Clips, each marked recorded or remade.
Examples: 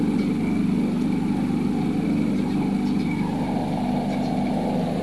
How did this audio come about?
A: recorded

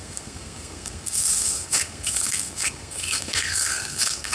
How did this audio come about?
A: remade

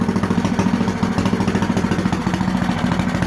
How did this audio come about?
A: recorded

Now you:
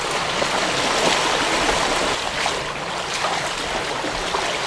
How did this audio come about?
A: recorded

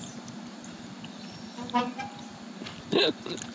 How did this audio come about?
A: recorded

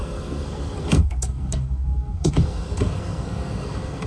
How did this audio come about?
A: remade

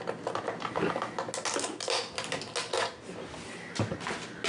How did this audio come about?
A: recorded